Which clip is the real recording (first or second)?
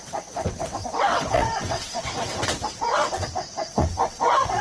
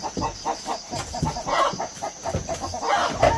second